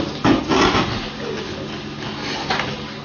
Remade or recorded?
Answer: recorded